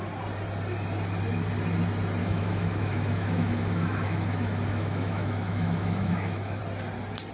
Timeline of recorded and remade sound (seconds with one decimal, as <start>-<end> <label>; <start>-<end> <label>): 0.0-2.2 recorded; 2.2-6.6 remade; 6.6-7.3 recorded